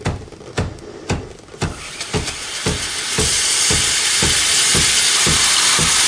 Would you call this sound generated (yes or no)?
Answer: no